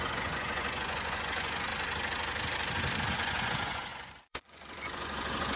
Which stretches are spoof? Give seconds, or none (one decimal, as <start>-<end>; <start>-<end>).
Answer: 0.0-1.7; 3.1-5.6